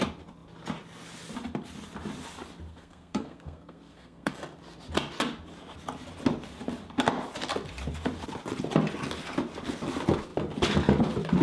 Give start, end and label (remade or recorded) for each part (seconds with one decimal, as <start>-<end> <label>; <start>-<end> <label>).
0.0-2.7 recorded; 2.7-4.3 remade; 4.3-11.4 recorded